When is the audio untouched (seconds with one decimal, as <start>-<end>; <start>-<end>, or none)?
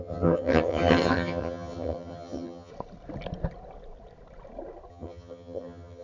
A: 2.7-4.9